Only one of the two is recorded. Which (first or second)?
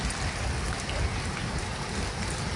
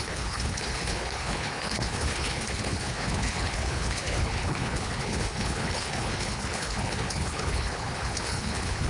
first